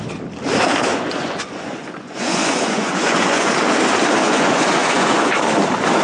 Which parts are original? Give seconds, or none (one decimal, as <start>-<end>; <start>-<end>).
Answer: 0.0-0.9; 3.5-4.2; 5.3-6.0